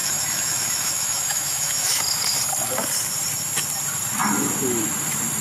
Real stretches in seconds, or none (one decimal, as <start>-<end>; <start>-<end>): 2.0-5.4